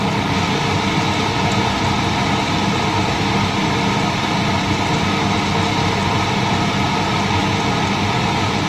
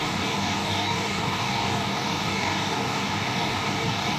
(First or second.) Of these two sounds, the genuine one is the first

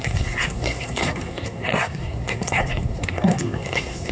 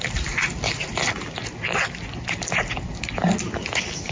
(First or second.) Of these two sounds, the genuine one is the second